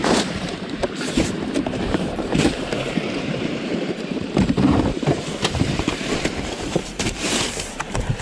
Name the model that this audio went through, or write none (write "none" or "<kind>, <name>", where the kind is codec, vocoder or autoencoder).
vocoder, BigVGAN v2